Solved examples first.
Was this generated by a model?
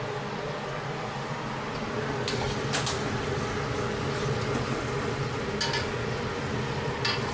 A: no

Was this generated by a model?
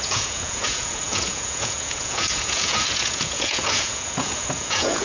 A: yes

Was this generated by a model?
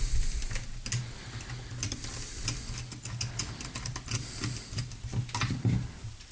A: no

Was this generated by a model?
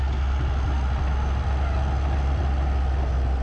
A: no